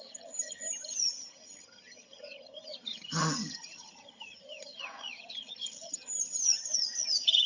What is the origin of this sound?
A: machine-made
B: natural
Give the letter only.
A